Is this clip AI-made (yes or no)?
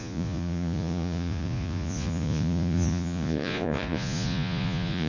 yes